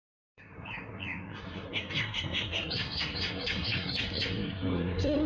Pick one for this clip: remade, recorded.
remade